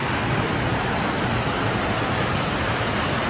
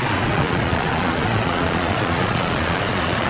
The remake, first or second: second